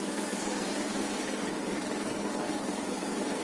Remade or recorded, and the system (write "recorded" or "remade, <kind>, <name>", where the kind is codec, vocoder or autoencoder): remade, codec, SNAC